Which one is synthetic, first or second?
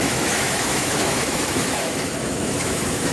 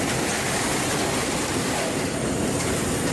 first